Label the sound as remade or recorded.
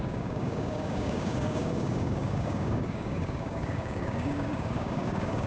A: remade